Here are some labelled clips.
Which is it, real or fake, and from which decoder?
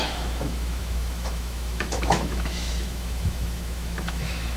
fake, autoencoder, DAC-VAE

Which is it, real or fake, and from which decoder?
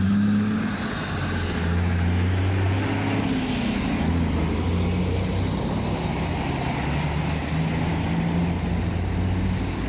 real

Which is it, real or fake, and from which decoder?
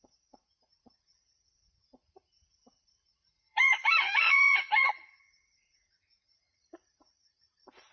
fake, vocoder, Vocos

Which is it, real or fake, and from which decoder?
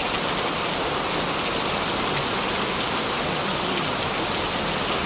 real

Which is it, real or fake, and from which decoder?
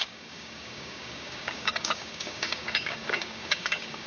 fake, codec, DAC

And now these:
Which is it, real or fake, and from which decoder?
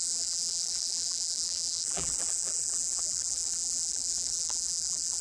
fake, vocoder, BigVGAN v2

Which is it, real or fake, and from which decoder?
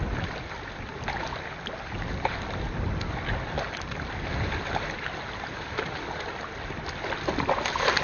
real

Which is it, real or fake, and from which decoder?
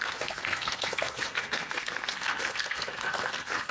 fake, codec, SNAC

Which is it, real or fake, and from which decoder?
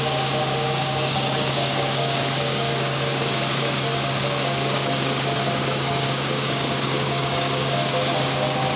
fake, codec, DAC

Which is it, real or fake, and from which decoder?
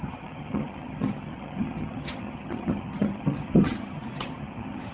fake, vocoder, HiFi-GAN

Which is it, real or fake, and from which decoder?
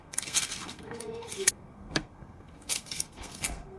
fake, codec, SNAC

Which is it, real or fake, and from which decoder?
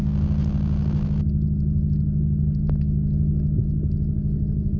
real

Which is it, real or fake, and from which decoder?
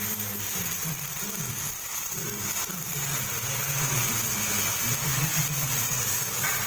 real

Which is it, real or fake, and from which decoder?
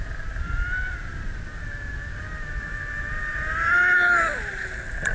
real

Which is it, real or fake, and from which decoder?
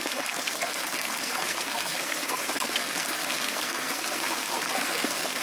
fake, codec, SNAC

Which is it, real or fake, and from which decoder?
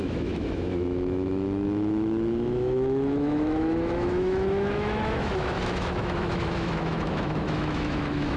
fake, autoencoder, DAC-VAE